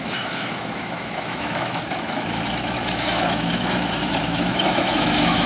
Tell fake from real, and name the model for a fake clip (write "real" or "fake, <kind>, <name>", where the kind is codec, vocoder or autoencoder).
fake, autoencoder, DAC-VAE